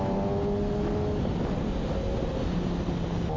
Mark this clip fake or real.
real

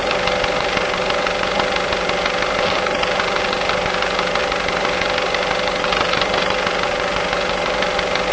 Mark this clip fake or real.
real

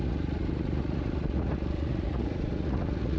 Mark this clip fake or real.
fake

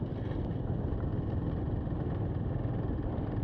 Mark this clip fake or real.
real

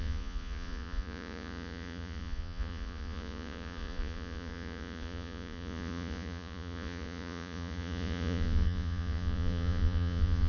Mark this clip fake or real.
fake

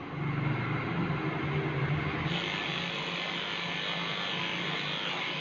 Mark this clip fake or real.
real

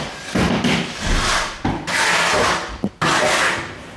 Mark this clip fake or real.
real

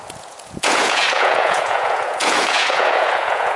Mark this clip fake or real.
fake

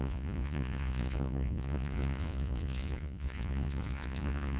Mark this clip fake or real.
fake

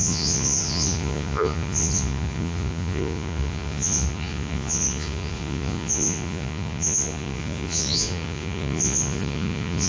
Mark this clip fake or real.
fake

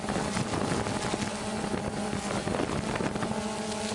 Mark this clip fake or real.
real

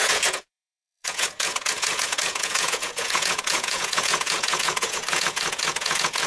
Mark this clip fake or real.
fake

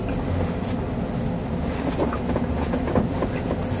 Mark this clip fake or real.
real